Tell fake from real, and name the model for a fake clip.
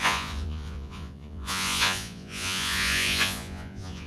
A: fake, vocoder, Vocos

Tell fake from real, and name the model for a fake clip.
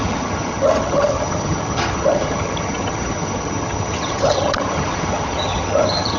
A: fake, vocoder, HiFi-GAN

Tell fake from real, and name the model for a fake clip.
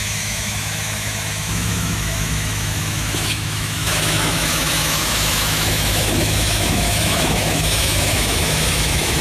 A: fake, autoencoder, DAC-VAE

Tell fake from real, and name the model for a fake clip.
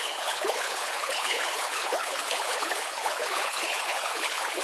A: fake, codec, HILCodec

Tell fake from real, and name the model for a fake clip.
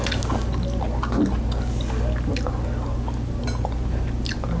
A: real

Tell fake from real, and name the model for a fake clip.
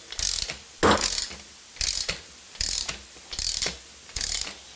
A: real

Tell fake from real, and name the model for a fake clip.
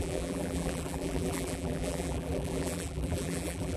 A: fake, vocoder, BigVGAN v2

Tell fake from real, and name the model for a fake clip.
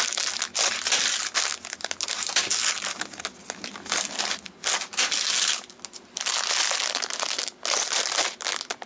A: real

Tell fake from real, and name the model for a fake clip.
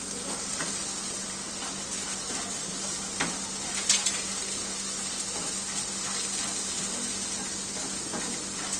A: real